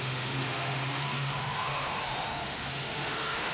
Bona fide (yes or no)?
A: no